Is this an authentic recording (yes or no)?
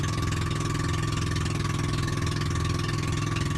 yes